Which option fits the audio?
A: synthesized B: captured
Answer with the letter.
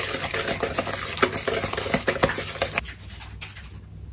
B